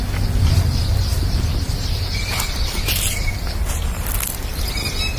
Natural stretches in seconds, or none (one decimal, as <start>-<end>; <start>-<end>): 0.0-5.2